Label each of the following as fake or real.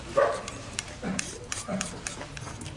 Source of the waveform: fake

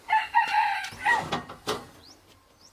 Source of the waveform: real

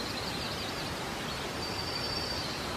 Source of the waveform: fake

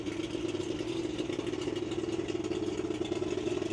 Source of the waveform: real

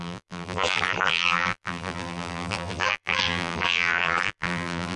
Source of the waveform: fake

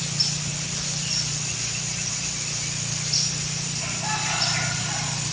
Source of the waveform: fake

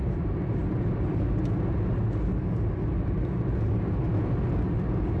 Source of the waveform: real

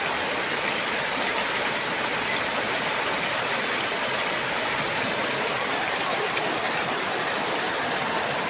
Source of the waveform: fake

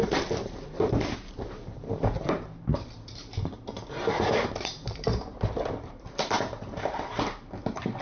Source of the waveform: fake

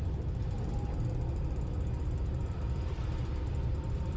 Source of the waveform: fake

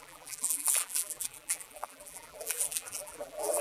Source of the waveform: fake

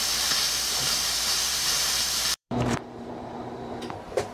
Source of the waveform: fake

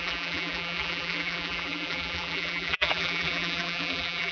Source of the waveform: fake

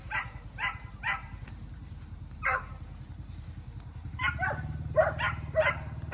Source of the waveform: fake